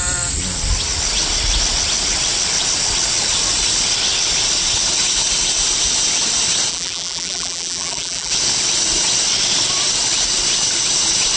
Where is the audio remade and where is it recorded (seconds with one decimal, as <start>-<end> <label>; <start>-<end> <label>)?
0.0-6.7 recorded; 6.7-8.3 remade; 8.3-11.4 recorded